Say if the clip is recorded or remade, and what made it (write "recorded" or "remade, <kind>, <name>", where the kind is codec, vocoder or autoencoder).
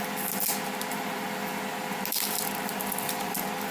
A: recorded